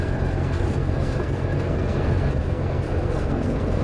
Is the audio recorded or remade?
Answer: remade